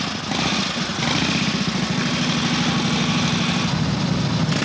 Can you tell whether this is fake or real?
real